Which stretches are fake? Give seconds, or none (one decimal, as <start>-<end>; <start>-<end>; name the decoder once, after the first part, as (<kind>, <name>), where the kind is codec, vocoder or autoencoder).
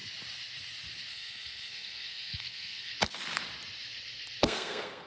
1.1-2.9 (codec, SNAC); 4.4-5.1